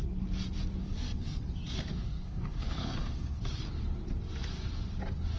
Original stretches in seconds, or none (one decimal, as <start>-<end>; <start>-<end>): 0.0-0.8; 1.4-1.9; 3.4-5.4